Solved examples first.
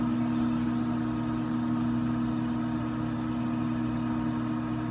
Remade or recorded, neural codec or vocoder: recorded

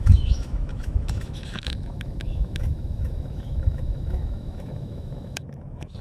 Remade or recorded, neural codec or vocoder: remade, autoencoder, DAC-VAE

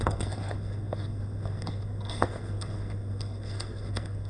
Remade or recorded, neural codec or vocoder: remade, codec, SNAC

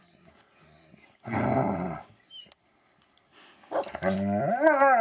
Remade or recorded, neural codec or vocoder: recorded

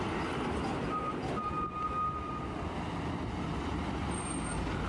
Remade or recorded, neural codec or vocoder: recorded